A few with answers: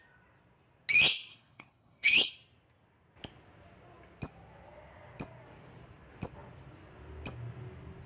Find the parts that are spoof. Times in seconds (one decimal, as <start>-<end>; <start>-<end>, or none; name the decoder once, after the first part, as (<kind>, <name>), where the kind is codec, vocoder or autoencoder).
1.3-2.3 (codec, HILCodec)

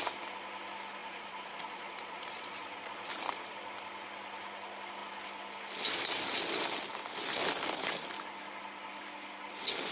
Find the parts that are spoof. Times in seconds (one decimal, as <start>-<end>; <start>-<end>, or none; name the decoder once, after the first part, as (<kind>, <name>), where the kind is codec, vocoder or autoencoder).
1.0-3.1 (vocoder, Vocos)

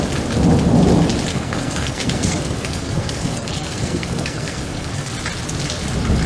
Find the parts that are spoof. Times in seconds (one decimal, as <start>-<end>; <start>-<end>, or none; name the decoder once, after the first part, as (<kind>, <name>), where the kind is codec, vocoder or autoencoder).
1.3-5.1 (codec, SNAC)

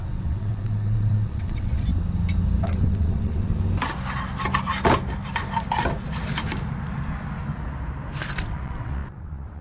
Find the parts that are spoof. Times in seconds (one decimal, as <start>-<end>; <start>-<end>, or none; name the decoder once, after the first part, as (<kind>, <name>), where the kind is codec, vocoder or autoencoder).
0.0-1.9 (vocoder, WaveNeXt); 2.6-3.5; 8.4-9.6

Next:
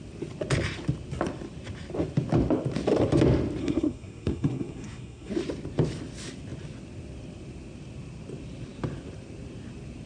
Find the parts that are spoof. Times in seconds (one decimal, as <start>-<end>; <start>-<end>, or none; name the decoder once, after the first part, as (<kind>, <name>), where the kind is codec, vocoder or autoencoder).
3.6-5.3 (codec, SNAC)

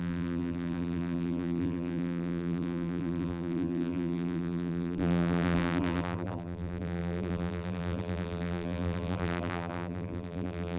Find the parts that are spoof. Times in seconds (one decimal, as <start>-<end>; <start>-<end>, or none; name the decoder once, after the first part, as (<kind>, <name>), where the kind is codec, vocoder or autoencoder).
0.0-10.8 (vocoder, BigVGAN v2)

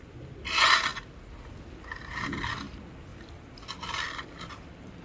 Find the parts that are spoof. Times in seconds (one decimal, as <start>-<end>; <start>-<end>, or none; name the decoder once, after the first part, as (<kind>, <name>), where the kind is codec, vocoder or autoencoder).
0.9-1.6 (vocoder, BigVGAN v2)